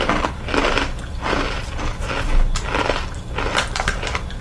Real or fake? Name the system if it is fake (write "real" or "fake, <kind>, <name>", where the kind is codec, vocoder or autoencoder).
real